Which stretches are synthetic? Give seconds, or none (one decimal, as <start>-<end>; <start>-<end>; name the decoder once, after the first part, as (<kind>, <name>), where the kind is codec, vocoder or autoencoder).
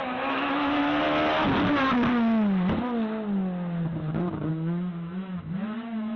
0.0-0.8 (autoencoder, DAC-VAE); 4.5-6.2